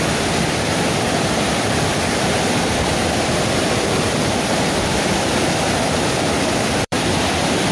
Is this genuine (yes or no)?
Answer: no